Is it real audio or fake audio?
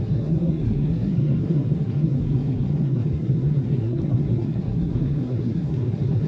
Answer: fake